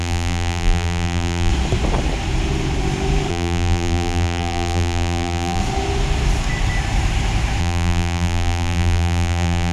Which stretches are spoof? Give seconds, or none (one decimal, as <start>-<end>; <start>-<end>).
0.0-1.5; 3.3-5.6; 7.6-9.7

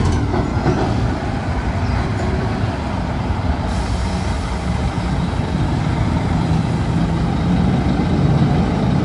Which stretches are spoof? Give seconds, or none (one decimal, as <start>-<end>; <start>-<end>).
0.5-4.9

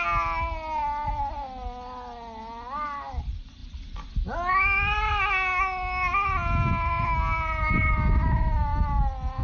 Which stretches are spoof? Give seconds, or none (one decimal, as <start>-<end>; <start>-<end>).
none